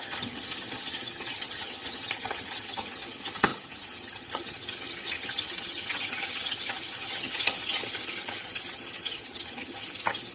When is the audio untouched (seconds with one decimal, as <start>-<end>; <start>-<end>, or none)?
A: none